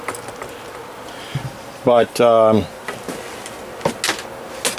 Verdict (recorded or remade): recorded